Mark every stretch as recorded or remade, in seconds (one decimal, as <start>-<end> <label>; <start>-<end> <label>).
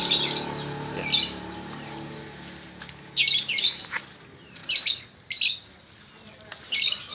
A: 0.0-7.1 recorded